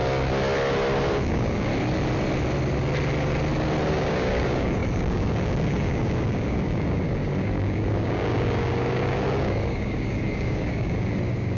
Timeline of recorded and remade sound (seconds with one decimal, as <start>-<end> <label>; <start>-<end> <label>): 0.0-1.1 recorded; 1.1-1.7 remade; 1.7-3.9 recorded; 3.9-11.6 remade